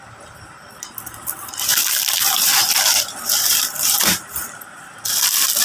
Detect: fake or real fake